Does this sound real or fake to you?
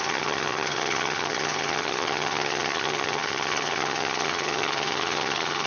fake